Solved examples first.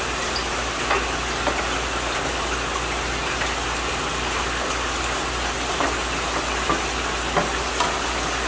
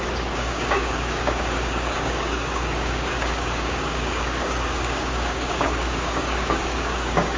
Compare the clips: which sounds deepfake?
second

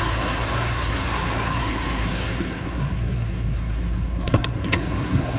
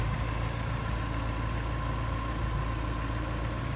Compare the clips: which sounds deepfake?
first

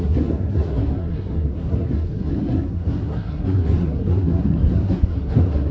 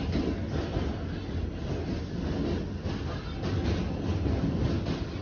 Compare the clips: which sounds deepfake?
first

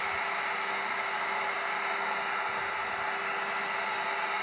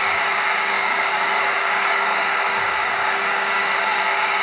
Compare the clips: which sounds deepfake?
second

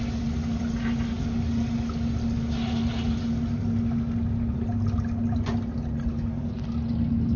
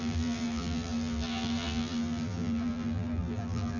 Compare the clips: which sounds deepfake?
second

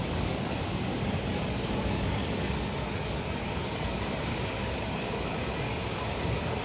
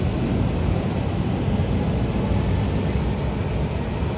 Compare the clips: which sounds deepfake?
first